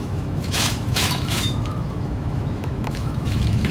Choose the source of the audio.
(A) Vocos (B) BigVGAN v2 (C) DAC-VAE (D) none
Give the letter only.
C